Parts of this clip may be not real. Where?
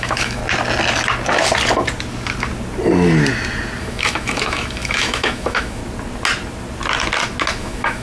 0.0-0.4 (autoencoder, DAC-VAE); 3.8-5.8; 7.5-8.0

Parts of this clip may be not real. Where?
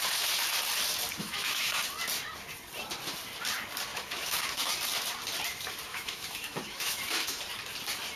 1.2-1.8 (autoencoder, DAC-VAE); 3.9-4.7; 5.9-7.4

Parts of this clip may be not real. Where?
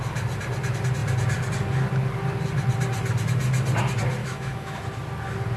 4.2-4.8 (autoencoder, DAC-VAE)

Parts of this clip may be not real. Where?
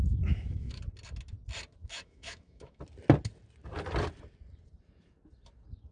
0.0-0.8 (autoencoder, DAC-VAE); 1.8-2.8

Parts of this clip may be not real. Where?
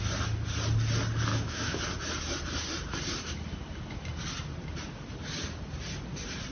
1.3-1.8 (autoencoder, DAC-VAE)